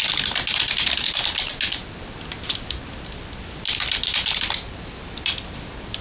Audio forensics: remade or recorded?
recorded